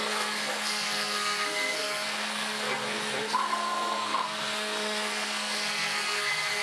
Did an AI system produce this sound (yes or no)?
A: yes